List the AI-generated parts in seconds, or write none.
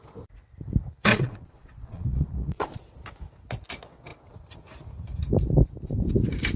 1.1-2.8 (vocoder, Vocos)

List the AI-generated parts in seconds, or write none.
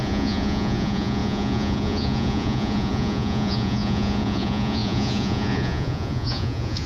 0.0-6.9 (vocoder, Vocos)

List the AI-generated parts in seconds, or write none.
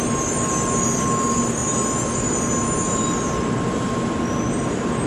none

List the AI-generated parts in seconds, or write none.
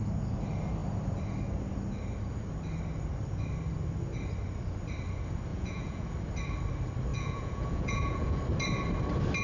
5.5-6.1 (vocoder, Vocos); 7.1-8.4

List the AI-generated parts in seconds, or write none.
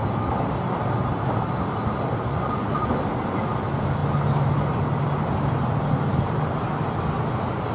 2.3-2.9 (vocoder, Vocos)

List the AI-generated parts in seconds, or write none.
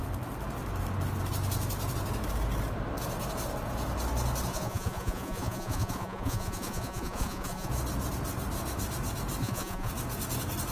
4.5-7.7 (vocoder, Vocos); 9.4-9.9